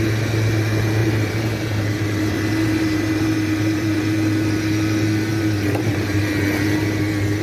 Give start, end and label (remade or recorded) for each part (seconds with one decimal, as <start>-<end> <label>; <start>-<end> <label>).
0.0-1.0 recorded; 1.0-4.0 remade; 4.0-5.3 recorded; 5.3-6.2 remade; 6.2-7.4 recorded

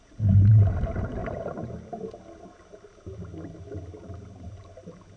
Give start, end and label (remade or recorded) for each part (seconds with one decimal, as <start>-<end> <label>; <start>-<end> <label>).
0.0-1.2 remade; 1.2-4.0 recorded; 4.0-5.2 remade